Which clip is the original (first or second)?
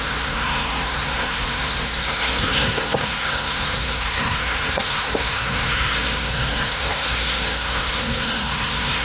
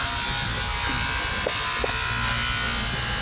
second